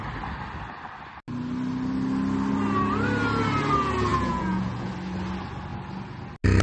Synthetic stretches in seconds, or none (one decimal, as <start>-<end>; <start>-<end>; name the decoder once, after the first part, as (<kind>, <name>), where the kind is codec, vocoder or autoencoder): 4.1-4.9 (vocoder, Vocos)